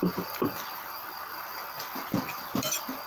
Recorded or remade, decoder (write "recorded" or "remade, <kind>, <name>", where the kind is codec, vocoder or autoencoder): recorded